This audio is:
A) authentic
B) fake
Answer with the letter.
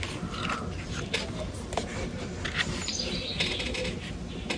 A